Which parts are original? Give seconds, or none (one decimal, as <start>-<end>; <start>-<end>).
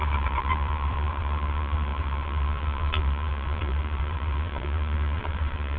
none